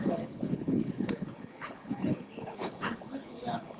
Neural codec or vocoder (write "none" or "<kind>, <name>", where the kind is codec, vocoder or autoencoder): codec, HILCodec